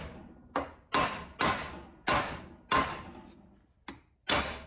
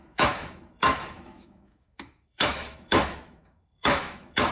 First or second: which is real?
first